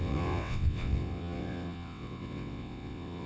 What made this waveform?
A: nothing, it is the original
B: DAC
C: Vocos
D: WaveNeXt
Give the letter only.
D